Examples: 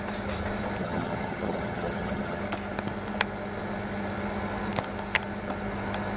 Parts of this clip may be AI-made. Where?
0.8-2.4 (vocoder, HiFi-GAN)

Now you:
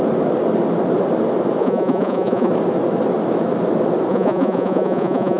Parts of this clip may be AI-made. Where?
1.6-2.5 (vocoder, Vocos); 4.1-5.4

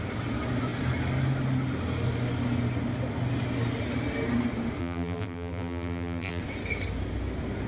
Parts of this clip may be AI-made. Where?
4.8-6.4 (vocoder, BigVGAN v2)